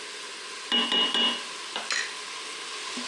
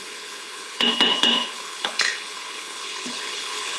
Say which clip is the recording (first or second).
first